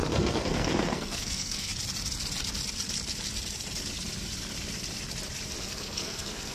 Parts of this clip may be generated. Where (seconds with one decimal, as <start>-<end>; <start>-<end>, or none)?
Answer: 0.0-1.7; 5.6-6.5